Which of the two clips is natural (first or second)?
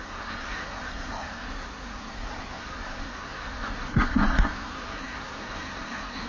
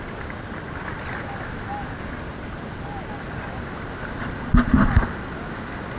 second